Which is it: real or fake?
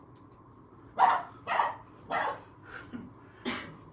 real